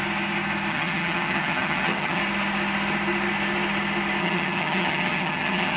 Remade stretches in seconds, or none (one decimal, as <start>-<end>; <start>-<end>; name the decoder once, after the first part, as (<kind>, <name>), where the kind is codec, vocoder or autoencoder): 0.7-2.2 (vocoder, HiFi-GAN); 4.2-5.8